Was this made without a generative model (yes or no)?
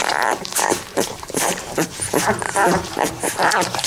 no